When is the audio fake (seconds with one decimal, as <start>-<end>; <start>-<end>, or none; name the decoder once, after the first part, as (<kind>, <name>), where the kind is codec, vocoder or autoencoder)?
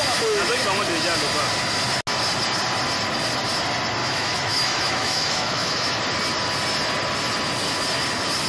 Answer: 4.0-6.0 (autoencoder, DAC-VAE)